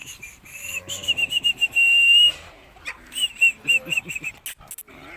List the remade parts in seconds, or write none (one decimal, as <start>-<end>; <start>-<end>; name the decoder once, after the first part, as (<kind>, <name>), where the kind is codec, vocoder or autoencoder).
0.0-3.1 (vocoder, BigVGAN v2)